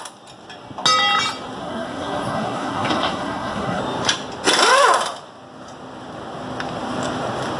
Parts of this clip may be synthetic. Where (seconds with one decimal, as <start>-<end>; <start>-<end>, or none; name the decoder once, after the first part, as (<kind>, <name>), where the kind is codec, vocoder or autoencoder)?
1.6-3.8 (codec, SNAC)